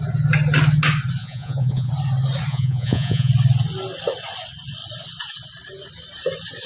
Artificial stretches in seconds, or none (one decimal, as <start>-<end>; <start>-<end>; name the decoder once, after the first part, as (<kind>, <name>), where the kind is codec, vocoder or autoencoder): 1.2-1.9 (vocoder, Vocos); 2.5-3.3

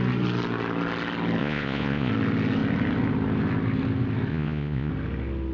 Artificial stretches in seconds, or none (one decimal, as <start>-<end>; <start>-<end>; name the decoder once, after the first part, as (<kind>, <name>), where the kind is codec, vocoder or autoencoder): 1.4-2.1 (vocoder, Vocos); 4.3-4.9

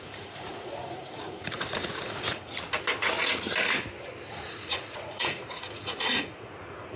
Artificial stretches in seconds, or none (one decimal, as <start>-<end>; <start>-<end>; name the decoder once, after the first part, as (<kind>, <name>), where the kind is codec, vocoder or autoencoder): 0.0-2.5 (vocoder, Vocos); 4.3-7.0

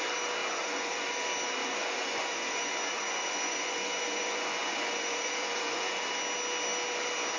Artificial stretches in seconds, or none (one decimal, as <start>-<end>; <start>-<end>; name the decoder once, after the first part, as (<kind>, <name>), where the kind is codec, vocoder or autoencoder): 0.4-1.1 (vocoder, Vocos); 1.6-6.0

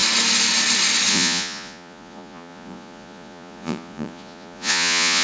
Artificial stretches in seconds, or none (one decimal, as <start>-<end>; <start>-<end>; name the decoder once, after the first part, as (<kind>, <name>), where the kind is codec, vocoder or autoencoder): 1.1-5.2 (vocoder, Vocos)

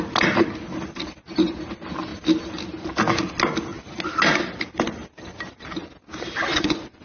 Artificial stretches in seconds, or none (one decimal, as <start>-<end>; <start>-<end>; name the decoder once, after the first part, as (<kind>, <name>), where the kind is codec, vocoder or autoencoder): 6.5-7.0 (vocoder, Vocos)